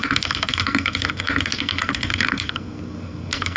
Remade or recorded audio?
remade